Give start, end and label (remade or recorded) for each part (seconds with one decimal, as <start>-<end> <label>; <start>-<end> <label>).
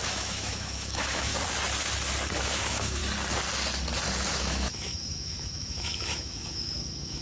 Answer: 0.0-1.3 remade; 1.3-2.4 recorded; 2.4-3.0 remade; 3.0-4.3 recorded; 4.3-7.2 remade